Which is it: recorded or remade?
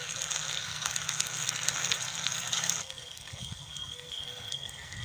remade